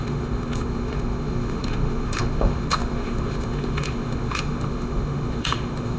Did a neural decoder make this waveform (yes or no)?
yes